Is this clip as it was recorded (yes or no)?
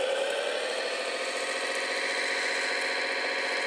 yes